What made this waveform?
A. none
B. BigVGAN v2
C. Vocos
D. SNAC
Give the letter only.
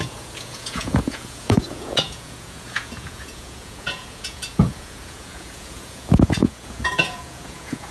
C